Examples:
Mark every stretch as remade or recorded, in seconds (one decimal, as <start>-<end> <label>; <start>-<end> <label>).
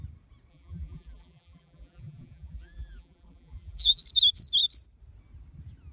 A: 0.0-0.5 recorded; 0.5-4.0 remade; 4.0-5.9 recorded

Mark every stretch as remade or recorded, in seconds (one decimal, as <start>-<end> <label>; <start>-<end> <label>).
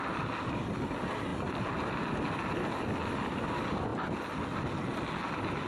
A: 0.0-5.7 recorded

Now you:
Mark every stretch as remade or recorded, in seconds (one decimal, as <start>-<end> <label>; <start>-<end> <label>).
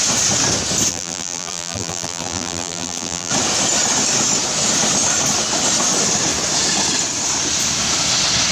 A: 0.0-0.9 recorded; 0.9-3.3 remade; 3.3-8.5 recorded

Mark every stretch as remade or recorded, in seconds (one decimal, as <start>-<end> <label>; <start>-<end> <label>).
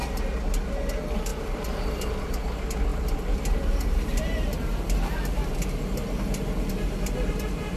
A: 0.0-1.3 recorded; 1.3-2.3 remade; 2.3-2.9 recorded; 2.9-7.3 remade; 7.3-7.8 recorded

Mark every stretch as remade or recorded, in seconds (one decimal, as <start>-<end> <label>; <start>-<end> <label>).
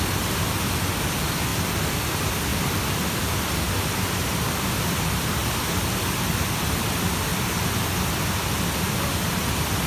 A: 0.0-2.5 recorded; 2.5-3.9 remade; 3.9-5.4 recorded; 5.4-6.0 remade; 6.0-9.9 recorded